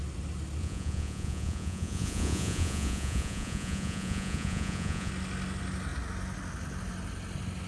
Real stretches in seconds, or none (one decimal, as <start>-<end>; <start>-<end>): 0.0-0.6; 5.1-7.7